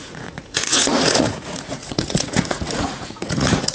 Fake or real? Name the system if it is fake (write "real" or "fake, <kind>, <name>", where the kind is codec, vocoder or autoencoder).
fake, vocoder, Vocos